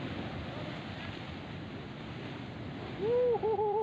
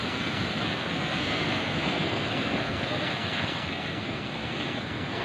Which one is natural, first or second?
first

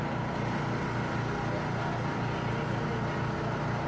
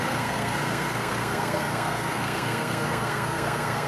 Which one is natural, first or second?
first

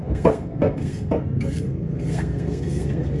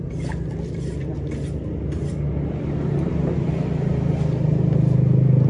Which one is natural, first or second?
second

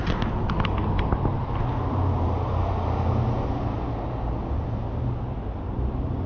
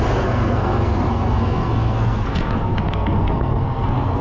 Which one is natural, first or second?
first